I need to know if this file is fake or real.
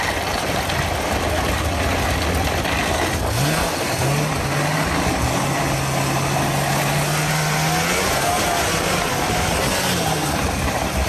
real